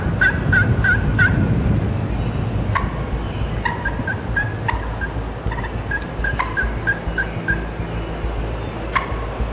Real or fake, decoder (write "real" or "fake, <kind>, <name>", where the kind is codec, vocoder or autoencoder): real